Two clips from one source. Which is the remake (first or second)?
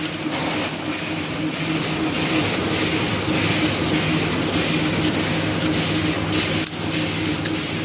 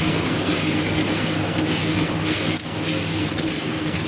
second